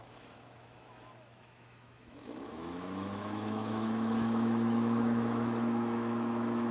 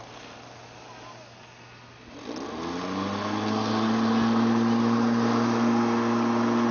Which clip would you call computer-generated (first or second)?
first